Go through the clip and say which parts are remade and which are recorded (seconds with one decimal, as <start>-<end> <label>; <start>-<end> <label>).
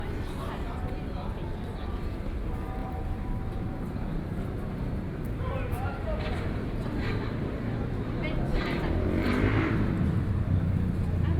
0.0-2.8 recorded; 2.8-7.9 remade; 7.9-8.5 recorded; 8.5-9.7 remade; 9.7-11.4 recorded